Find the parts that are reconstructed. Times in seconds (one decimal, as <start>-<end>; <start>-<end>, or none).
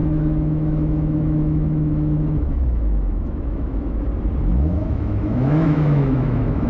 0.0-4.0; 4.5-6.7